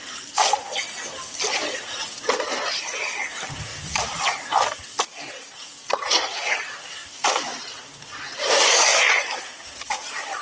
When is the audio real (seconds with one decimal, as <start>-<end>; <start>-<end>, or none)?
0.0-10.4

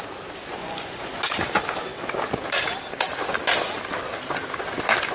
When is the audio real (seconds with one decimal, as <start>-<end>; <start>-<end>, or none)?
0.0-0.5; 1.1-5.1